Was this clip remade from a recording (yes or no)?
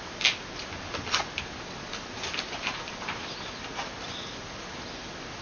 no